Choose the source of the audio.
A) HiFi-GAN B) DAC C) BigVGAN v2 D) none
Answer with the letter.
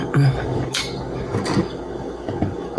B